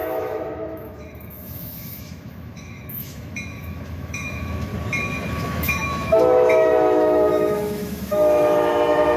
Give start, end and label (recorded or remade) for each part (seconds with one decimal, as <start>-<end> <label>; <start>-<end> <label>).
0.0-4.7 remade; 4.7-5.3 recorded; 5.3-9.2 remade